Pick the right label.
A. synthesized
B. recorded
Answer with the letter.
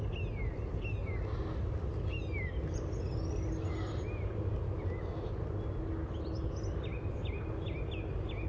B